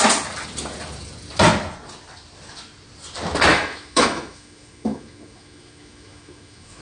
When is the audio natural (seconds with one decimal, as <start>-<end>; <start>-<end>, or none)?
0.0-3.5